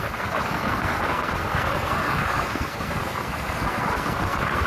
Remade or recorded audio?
remade